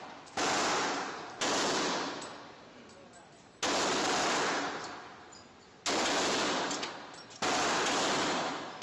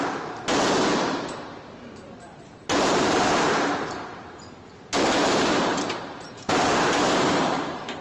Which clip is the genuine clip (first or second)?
first